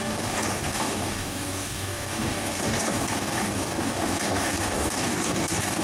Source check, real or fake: fake